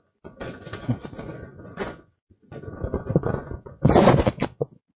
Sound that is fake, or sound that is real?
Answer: fake